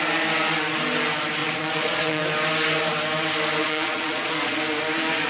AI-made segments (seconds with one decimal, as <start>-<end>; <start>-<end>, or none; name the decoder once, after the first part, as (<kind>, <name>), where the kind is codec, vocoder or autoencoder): 1.4-2.2 (vocoder, Vocos); 3.6-4.6